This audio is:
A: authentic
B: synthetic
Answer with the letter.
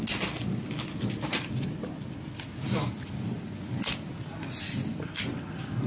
A